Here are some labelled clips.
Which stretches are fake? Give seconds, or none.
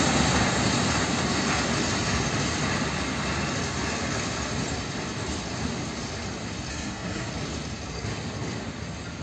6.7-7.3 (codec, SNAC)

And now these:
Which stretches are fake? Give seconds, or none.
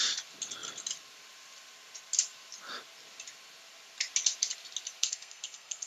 5.0-5.9 (codec, SNAC)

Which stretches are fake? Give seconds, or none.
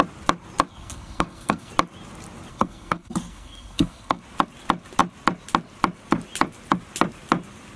0.7-1.7 (codec, SNAC); 2.5-4.2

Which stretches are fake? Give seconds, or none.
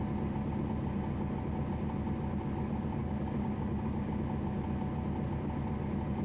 3.0-4.1 (codec, DAC)